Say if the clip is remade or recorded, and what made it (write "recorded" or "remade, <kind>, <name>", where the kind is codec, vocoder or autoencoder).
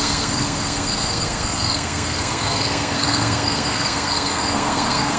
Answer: remade, codec, SNAC